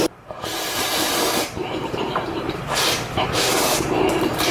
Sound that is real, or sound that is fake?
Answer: fake